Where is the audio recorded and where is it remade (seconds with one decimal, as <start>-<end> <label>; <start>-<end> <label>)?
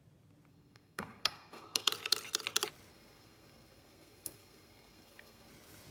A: 0.0-0.5 recorded; 0.5-1.9 remade; 1.9-2.9 recorded; 2.9-5.5 remade; 5.5-5.9 recorded